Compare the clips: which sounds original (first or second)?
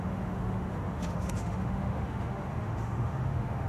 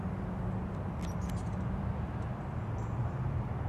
second